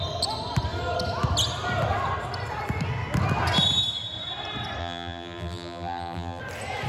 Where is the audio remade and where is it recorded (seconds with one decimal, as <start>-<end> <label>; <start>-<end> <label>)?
0.0-4.8 recorded; 4.8-6.4 remade; 6.4-6.9 recorded